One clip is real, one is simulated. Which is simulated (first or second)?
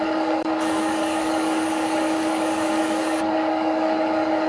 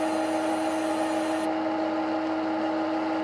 first